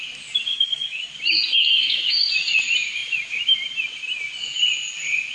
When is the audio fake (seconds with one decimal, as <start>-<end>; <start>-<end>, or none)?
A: 0.5-1.1; 1.5-2.1